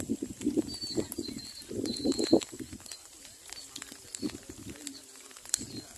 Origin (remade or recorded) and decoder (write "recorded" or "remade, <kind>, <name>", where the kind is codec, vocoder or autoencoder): recorded